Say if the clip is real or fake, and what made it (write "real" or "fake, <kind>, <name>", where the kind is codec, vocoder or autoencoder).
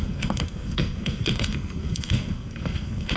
fake, codec, SNAC